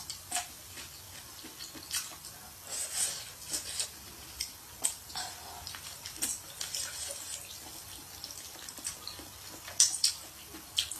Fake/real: real